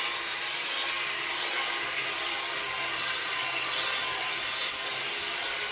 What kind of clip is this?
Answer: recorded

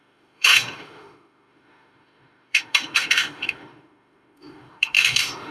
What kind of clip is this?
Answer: remade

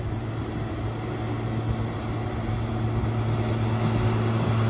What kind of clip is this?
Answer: recorded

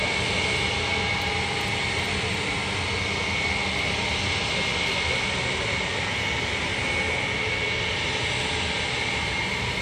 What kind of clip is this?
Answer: recorded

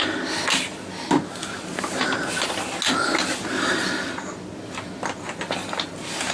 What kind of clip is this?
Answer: recorded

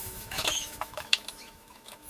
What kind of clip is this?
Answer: remade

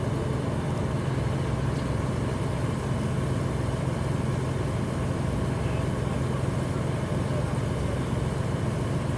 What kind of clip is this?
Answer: recorded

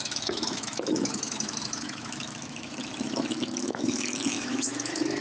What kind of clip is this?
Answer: remade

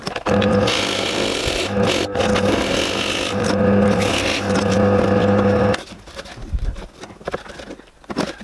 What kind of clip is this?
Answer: recorded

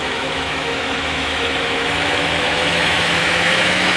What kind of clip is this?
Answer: remade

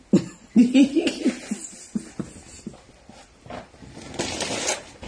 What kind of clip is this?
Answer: recorded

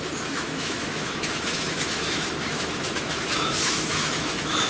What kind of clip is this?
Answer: remade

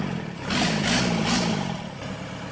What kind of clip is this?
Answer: recorded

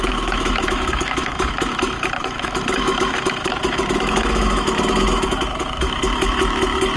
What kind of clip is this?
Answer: remade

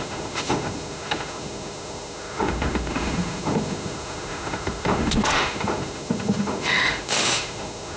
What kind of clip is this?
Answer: remade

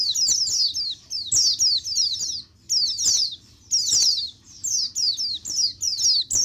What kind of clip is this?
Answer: recorded